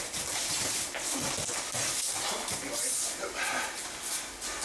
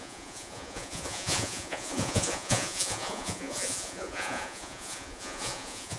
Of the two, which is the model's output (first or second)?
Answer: second